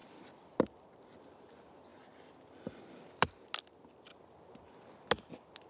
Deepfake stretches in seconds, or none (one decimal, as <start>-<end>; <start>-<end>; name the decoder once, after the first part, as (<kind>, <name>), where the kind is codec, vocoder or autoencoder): none